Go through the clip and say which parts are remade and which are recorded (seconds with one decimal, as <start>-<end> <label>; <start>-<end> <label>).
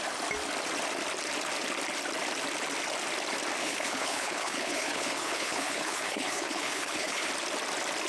0.0-3.6 recorded; 3.6-7.3 remade; 7.3-8.1 recorded